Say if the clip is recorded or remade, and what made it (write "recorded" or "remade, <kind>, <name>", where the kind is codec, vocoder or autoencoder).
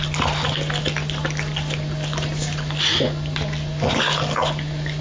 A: recorded